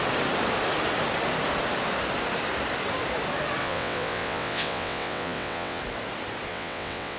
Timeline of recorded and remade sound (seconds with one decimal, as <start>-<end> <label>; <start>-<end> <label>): 0.0-3.6 recorded; 3.6-5.8 remade; 5.8-6.5 recorded; 6.5-7.2 remade